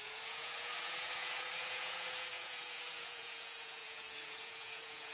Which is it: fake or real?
fake